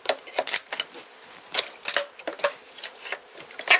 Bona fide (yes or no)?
yes